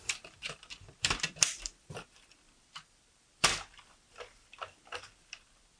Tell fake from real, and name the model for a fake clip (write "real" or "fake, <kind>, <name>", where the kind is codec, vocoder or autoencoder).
fake, vocoder, BigVGAN v2